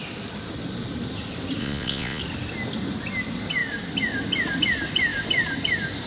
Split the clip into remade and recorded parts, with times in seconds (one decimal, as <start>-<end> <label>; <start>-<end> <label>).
0.0-1.6 recorded; 1.6-2.2 remade; 2.2-6.1 recorded